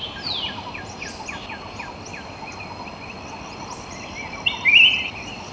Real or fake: real